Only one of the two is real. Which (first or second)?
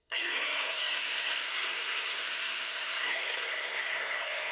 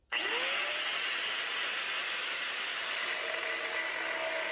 second